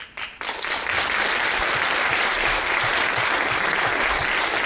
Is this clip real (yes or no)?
yes